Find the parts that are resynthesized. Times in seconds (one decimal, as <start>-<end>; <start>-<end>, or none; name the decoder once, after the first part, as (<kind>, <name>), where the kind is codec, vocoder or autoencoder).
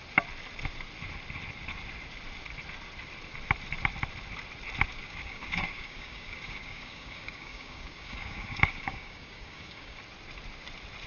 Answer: 5.0-10.0 (codec, DAC)